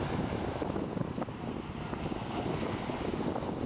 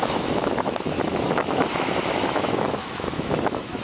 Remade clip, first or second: second